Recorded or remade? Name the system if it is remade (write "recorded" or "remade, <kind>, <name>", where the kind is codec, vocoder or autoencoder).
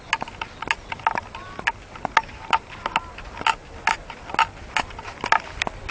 recorded